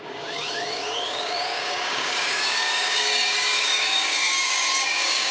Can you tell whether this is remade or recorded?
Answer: remade